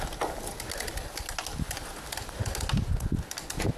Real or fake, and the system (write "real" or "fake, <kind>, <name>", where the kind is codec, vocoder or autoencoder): real